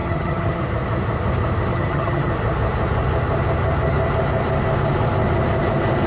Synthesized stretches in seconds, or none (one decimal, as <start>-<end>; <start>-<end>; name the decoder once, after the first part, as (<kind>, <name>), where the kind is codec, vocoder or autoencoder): 0.0-0.6 (vocoder, HiFi-GAN); 1.7-2.3